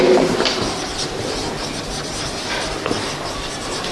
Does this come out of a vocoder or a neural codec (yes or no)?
no